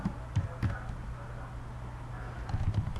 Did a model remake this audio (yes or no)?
no